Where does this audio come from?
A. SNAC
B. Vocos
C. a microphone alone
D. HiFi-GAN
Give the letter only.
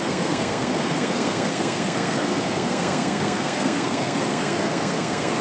A